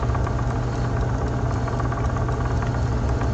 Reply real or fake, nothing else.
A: real